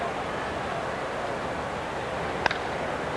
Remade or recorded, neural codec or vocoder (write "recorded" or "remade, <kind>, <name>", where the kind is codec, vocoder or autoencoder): recorded